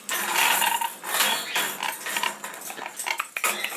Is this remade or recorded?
recorded